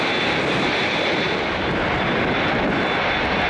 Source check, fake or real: real